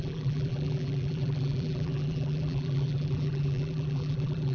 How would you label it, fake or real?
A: fake